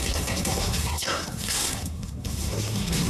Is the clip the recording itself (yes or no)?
no